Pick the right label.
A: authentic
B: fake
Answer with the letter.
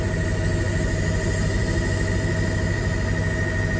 A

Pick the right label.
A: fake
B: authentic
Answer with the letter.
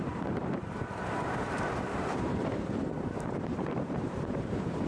A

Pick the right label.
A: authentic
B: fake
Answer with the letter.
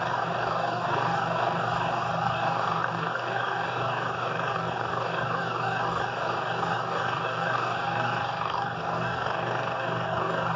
B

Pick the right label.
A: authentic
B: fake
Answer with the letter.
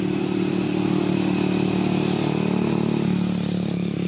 A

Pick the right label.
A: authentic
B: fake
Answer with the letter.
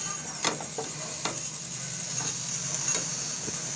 A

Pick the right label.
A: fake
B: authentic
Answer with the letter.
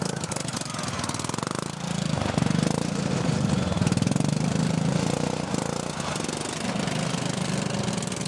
B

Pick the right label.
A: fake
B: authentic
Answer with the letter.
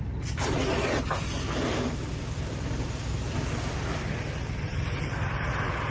B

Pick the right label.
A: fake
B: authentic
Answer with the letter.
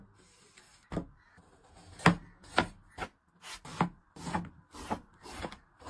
B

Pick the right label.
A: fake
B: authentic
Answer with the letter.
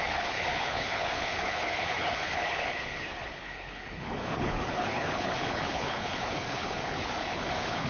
A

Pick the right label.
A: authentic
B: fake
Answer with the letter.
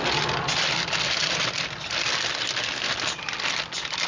A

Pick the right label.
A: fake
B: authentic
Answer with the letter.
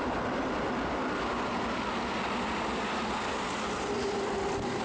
B